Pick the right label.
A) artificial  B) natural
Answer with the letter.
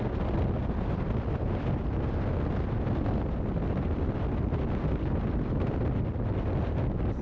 B